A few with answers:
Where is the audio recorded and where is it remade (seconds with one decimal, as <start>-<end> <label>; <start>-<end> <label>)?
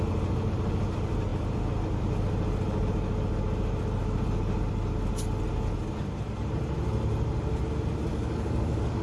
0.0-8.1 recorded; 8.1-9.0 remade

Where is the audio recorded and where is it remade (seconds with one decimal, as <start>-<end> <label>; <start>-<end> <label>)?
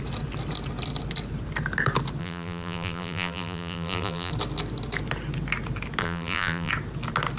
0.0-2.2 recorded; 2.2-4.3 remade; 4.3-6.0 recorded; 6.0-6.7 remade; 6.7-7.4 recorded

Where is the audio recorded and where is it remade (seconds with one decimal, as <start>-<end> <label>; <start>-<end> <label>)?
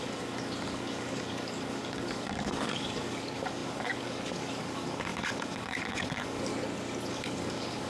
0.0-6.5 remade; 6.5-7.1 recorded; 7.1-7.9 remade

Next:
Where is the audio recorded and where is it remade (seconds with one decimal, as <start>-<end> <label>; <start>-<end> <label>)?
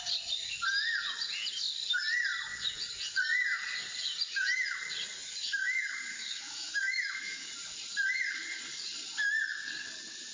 0.0-5.6 recorded; 5.6-7.5 remade; 7.5-10.3 recorded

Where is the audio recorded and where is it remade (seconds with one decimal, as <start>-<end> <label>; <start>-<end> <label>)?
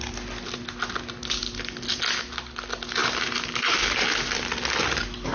0.0-5.3 recorded